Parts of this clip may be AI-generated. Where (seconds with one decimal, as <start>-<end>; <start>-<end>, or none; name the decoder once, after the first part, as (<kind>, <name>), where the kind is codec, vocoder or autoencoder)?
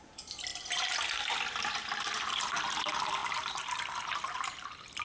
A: none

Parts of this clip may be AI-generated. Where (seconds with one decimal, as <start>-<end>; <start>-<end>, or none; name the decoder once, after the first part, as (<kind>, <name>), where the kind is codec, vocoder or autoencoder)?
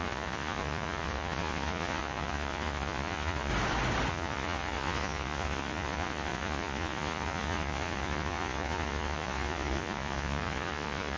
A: 0.0-3.5 (vocoder, Vocos); 4.1-11.2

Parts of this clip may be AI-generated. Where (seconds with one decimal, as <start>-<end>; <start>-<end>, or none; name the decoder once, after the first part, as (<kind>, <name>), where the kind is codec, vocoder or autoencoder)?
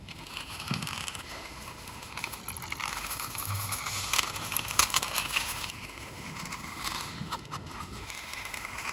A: 0.0-2.4 (autoencoder, DAC-VAE); 2.9-8.9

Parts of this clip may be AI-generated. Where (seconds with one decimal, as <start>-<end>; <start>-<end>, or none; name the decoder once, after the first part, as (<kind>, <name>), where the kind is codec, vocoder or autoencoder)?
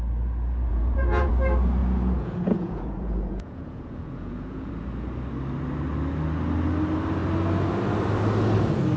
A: 0.7-1.3 (vocoder, Vocos); 1.8-4.7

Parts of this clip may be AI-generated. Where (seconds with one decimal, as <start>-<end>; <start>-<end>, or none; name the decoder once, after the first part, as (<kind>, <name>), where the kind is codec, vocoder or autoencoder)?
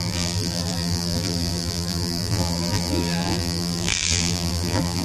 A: 0.0-5.0 (vocoder, BigVGAN v2)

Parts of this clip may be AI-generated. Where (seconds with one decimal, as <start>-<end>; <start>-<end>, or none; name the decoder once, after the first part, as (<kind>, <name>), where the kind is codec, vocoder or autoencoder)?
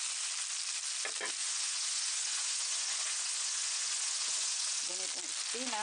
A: 1.4-4.9 (vocoder, Vocos)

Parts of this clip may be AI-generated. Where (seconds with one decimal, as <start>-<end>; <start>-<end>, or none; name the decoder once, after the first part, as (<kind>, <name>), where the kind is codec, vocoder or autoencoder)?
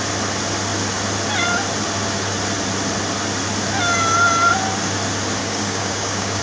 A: 5.4-6.4 (codec, DAC)